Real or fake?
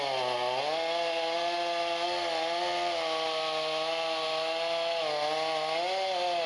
real